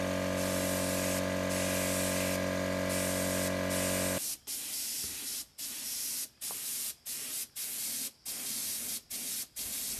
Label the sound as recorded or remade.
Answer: recorded